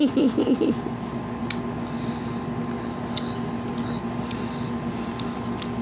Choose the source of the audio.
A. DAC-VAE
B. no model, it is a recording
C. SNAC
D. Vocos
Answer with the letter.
B